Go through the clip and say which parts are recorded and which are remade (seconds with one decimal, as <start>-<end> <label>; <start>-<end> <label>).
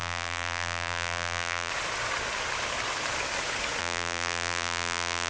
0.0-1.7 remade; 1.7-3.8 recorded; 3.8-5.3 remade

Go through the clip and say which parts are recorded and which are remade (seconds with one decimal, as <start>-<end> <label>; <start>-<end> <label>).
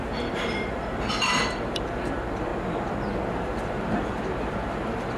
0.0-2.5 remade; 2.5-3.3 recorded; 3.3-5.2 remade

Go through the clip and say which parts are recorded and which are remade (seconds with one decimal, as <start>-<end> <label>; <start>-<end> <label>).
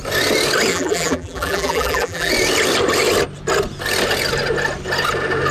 0.0-0.7 recorded; 0.7-2.3 remade; 2.3-5.5 recorded